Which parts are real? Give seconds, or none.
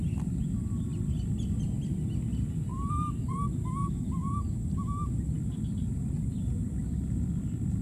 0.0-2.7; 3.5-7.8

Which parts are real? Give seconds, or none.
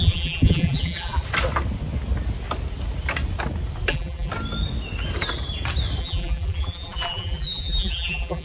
1.2-3.9; 4.3-6.0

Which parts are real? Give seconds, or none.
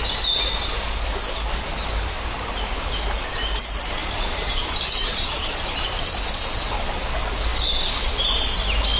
0.0-4.0; 6.1-9.0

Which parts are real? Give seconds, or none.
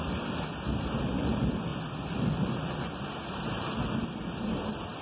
0.0-5.0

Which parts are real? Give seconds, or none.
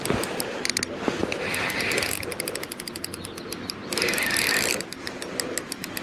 1.2-4.7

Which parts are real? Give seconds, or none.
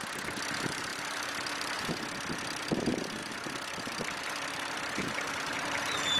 none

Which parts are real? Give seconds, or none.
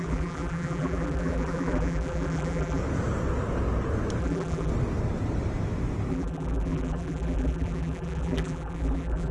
2.8-4.2; 4.7-6.1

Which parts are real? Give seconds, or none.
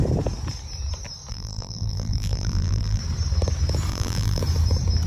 0.0-1.3; 3.0-3.9; 4.4-5.1